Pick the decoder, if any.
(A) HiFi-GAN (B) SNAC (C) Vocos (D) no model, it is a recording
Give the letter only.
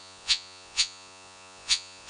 C